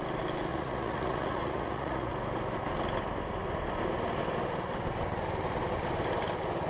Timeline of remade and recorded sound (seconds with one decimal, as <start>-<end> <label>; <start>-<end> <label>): 0.0-0.5 recorded; 0.5-2.1 remade; 2.1-6.7 recorded